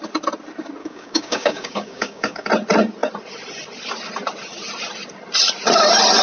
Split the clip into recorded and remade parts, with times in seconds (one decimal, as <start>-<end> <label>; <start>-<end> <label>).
0.0-0.8 recorded; 0.8-2.5 remade; 2.5-6.2 recorded